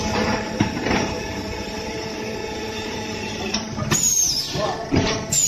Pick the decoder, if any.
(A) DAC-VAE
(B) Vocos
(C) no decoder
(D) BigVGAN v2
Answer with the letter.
D